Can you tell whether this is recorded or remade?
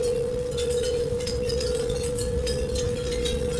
remade